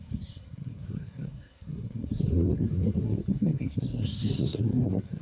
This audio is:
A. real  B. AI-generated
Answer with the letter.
B